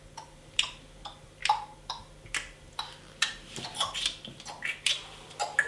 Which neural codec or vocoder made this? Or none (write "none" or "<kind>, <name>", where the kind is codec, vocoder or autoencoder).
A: none